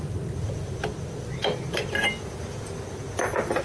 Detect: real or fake real